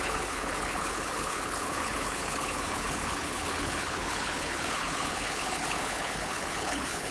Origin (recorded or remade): remade